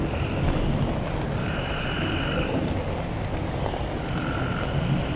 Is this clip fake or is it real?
real